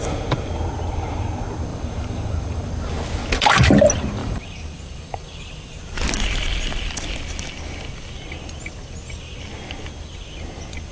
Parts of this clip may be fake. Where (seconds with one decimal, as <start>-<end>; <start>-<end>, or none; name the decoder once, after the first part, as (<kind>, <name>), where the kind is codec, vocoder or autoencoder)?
1.7-2.7 (vocoder, BigVGAN v2); 4.2-5.8